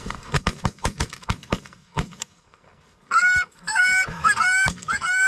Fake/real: fake